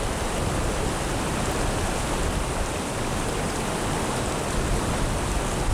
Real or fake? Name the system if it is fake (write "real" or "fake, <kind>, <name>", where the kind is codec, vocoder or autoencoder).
real